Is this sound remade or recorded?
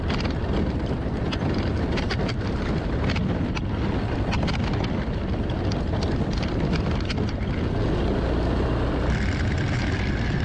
recorded